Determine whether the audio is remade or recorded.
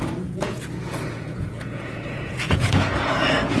remade